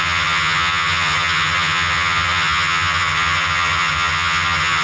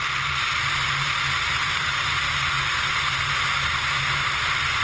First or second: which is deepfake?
first